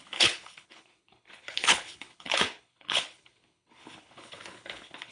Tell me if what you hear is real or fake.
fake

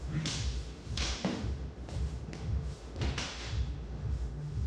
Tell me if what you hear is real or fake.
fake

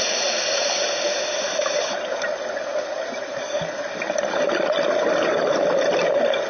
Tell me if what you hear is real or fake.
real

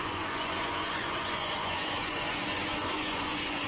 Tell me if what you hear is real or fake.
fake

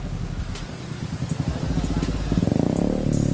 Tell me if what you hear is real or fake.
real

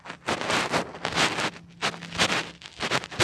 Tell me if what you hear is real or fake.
real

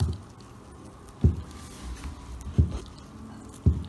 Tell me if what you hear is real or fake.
real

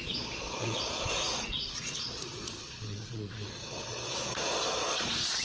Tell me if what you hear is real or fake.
fake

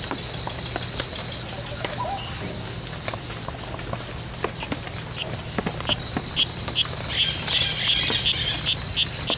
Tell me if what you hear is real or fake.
real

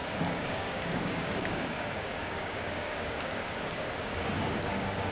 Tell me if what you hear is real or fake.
fake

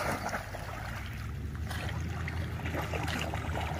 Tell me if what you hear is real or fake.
real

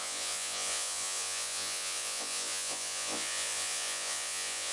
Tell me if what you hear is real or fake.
fake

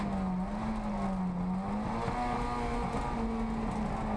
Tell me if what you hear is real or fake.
real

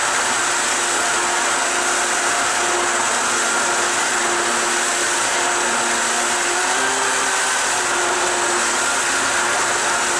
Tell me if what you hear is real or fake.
real